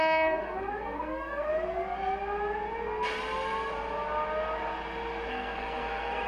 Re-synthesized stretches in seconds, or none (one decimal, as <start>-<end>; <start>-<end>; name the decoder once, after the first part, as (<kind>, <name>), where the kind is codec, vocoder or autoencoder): 0.0-1.5 (codec, SNAC); 5.3-6.3